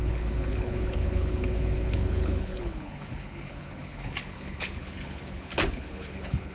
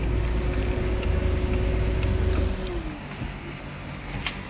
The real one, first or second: second